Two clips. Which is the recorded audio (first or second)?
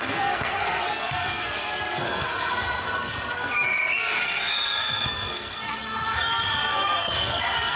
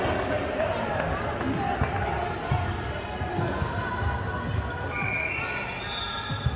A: second